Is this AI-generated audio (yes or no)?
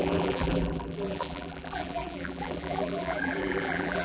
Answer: yes